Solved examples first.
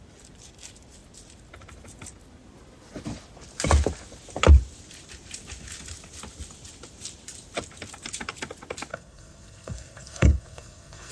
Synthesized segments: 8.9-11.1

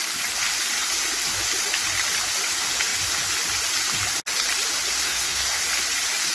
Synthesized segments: 5.0-5.7

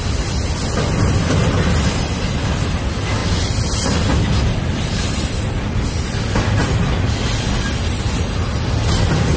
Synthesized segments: none